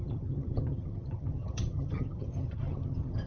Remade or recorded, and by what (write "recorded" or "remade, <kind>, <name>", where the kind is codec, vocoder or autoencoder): remade, vocoder, HiFi-GAN